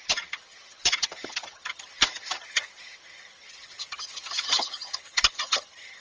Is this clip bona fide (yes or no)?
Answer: no